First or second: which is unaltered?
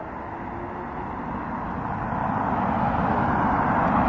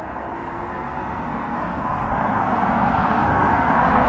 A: first